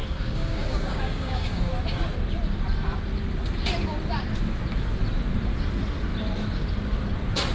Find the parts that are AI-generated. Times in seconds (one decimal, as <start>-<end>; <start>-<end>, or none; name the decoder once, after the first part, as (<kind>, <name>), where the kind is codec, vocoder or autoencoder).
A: 0.0-1.7 (codec, DAC)